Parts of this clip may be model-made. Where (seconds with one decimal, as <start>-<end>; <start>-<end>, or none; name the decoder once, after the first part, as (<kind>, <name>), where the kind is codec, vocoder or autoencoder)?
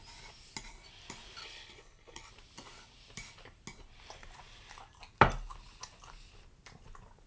1.4-2.3 (codec, HILCodec)